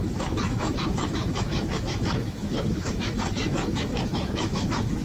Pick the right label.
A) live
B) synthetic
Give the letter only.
B